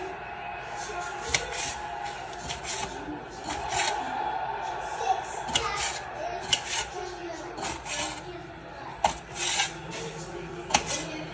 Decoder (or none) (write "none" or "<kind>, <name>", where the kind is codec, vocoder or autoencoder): none